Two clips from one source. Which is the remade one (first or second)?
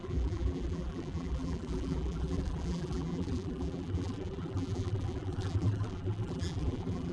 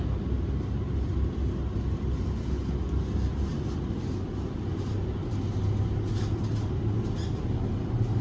first